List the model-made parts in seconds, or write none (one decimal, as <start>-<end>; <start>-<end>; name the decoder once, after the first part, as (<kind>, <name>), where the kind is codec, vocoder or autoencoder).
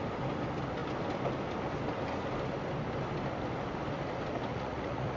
4.5-5.2 (vocoder, Vocos)